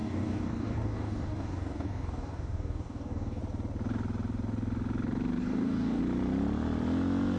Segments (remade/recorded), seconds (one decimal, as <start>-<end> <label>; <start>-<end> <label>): 0.0-3.4 remade; 3.4-5.4 recorded; 5.4-6.0 remade; 6.0-7.4 recorded